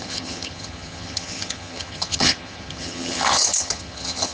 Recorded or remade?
remade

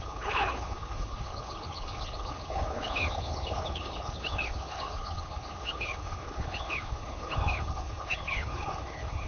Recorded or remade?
remade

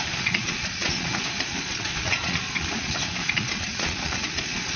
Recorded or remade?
remade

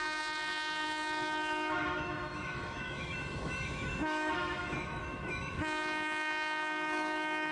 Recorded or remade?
remade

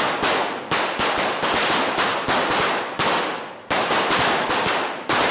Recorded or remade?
recorded